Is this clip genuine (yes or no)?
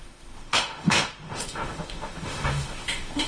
no